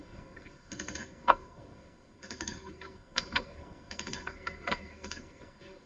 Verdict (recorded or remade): remade